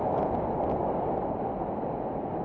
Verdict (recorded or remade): recorded